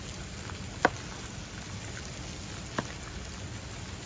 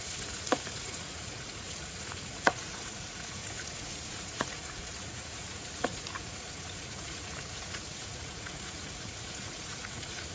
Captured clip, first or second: first